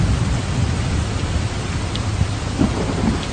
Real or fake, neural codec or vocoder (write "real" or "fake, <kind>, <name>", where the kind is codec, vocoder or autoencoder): real